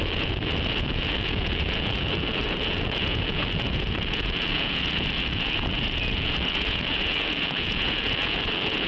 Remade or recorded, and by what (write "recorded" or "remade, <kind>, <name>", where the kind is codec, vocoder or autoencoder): remade, vocoder, Vocos